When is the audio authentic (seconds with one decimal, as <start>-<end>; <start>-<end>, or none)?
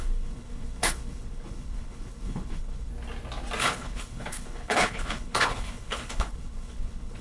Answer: 2.9-3.6